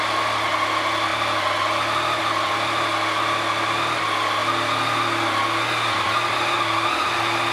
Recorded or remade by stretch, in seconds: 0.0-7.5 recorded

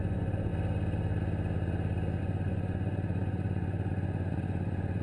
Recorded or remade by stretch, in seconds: 0.0-0.5 remade; 0.5-2.2 recorded; 2.2-5.0 remade

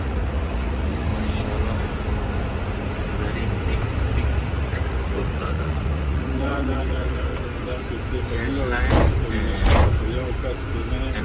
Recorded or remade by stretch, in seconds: 0.0-1.1 remade; 1.1-4.4 recorded; 4.4-7.3 remade; 7.3-11.2 recorded